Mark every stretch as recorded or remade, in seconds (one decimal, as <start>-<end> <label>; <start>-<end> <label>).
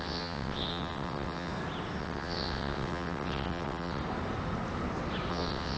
0.0-1.5 remade; 1.5-2.0 recorded; 2.0-4.0 remade; 4.0-5.3 recorded; 5.3-5.8 remade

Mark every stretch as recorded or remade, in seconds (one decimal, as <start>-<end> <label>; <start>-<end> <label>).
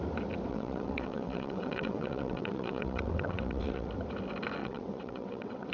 0.0-0.5 recorded; 0.5-3.9 remade; 3.9-4.6 recorded; 4.6-5.7 remade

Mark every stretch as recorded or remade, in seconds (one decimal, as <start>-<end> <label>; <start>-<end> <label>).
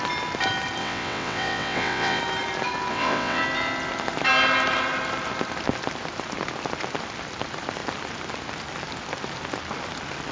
0.0-0.8 recorded; 0.8-2.2 remade; 2.2-2.9 recorded; 2.9-3.4 remade; 3.4-10.3 recorded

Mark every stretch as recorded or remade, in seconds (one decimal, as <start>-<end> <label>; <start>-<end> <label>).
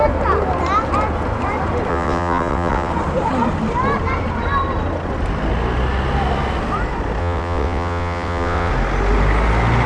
0.0-1.9 recorded; 1.9-2.9 remade; 2.9-7.2 recorded; 7.2-8.7 remade; 8.7-9.9 recorded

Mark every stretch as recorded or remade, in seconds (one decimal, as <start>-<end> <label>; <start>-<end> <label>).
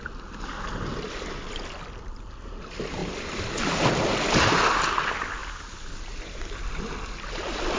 0.0-7.8 recorded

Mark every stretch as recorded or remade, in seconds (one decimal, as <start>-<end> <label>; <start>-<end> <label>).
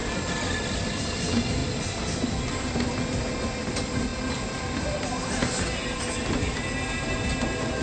0.0-7.8 recorded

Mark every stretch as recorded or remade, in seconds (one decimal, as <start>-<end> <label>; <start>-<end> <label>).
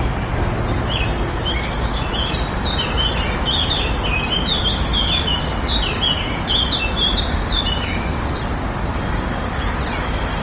0.0-10.4 recorded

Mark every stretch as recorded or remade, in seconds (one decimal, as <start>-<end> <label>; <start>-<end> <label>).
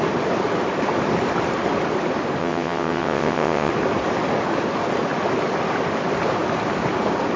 0.0-2.4 recorded; 2.4-3.7 remade; 3.7-7.4 recorded